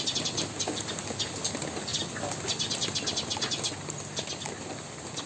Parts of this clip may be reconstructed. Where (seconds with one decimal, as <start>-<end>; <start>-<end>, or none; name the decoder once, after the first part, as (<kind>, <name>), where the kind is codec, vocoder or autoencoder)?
none